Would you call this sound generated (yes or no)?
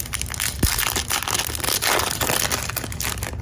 no